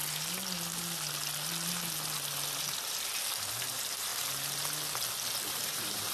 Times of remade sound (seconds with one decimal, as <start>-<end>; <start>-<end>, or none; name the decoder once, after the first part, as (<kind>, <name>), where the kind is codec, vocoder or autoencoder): 2.8-4.1 (vocoder, BigVGAN v2); 5.5-6.1